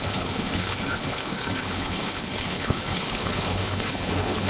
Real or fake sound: fake